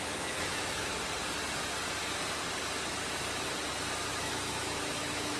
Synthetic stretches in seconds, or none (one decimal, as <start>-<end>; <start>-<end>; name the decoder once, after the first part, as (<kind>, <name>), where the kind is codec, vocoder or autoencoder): 0.0-0.9 (autoencoder, DAC-VAE); 4.1-5.4